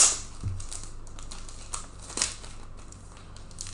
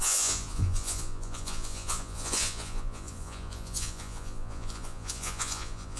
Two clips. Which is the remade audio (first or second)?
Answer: second